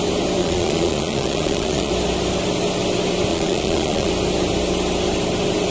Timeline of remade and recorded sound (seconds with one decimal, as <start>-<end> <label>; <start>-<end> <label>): 0.0-0.4 recorded; 0.4-1.9 remade; 1.9-3.3 recorded; 3.3-4.1 remade; 4.1-5.7 recorded